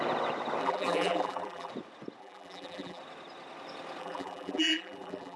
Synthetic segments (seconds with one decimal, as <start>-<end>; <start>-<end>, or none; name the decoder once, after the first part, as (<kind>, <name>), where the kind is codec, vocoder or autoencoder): 0.6-1.7 (vocoder, BigVGAN v2); 2.2-3.0; 4.0-5.4